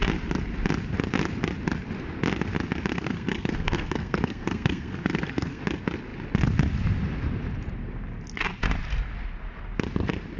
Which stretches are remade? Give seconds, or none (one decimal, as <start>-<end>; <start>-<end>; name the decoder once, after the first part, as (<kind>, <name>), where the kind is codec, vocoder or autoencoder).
2.9-5.6 (codec, SNAC)